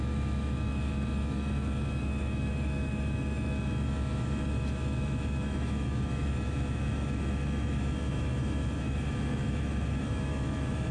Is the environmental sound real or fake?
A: fake